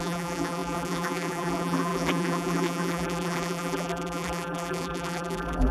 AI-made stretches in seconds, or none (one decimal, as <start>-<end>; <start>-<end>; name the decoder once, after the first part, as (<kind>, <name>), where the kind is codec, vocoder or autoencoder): 0.0-5.7 (vocoder, BigVGAN v2)